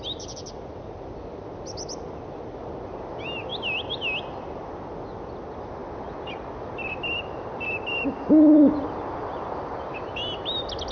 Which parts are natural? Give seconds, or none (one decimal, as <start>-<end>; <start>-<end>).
0.0-10.9